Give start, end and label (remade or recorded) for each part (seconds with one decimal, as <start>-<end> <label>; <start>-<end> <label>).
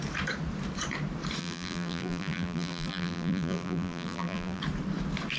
0.0-1.4 recorded; 1.4-4.6 remade; 4.6-5.4 recorded